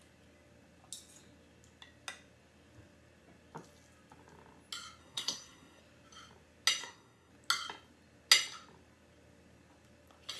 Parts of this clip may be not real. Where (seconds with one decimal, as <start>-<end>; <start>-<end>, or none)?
5.0-5.8; 6.8-7.3